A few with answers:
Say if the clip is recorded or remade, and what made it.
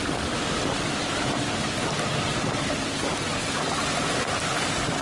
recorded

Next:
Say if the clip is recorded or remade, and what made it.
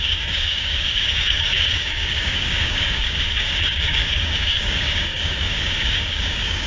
remade, codec, DAC